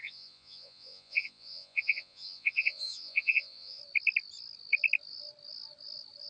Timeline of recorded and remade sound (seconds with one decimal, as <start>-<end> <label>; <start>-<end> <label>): 0.0-3.8 remade; 3.8-6.3 recorded